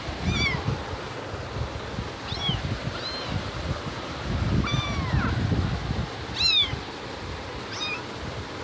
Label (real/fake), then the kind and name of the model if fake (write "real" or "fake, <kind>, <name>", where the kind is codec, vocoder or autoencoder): real